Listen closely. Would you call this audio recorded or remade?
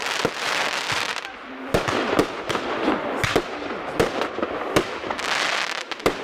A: recorded